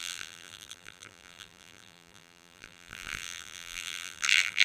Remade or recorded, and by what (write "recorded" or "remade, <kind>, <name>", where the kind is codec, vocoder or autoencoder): remade, vocoder, BigVGAN v2